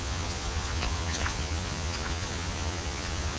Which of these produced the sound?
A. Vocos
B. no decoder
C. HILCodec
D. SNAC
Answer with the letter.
A